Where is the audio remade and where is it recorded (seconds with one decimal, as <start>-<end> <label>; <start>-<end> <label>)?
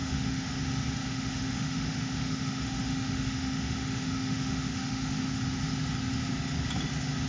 0.0-0.6 remade; 0.6-1.0 recorded; 1.0-5.2 remade; 5.2-7.3 recorded